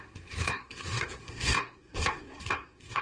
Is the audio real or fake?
fake